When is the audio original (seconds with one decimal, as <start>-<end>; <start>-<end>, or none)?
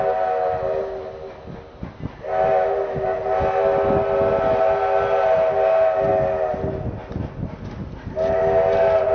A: 0.0-9.1